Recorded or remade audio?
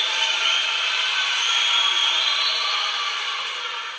recorded